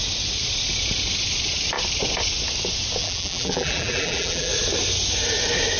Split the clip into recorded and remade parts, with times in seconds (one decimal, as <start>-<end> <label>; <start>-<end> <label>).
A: 0.0-3.0 recorded; 3.0-4.5 remade; 4.5-5.8 recorded